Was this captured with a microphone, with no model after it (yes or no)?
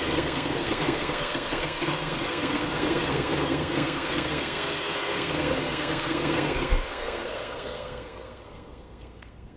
no